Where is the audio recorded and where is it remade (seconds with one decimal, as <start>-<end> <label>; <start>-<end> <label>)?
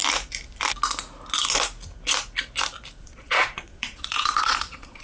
0.0-3.0 recorded; 3.0-5.0 remade